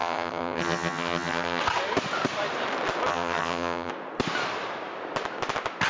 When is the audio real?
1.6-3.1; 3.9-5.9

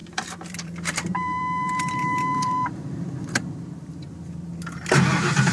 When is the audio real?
4.5-5.5

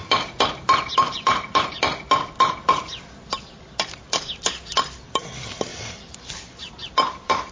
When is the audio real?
1.8-5.7

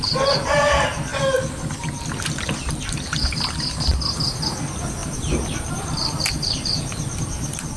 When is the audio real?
0.0-5.0

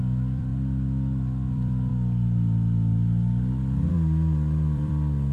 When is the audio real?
0.5-1.5; 1.9-3.9

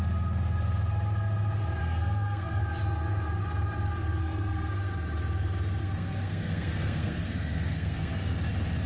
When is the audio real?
0.0-1.8; 2.6-4.2; 4.9-5.8; 8.1-8.9

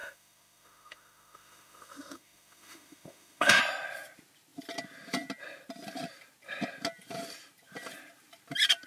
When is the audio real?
3.6-8.9

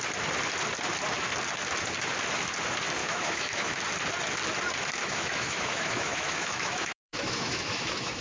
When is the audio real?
0.0-3.0; 3.8-5.0